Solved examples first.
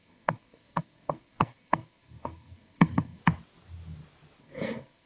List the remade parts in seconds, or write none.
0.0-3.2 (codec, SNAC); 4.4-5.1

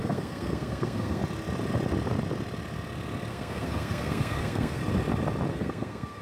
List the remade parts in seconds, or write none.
0.0-1.2 (codec, SNAC); 3.3-4.8; 5.5-6.2

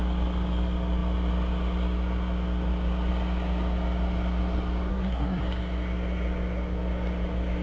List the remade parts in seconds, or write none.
4.9-5.4 (codec, SNAC)

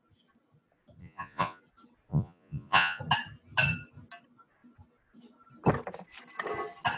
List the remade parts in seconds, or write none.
1.0-1.6 (vocoder, Vocos); 2.1-3.0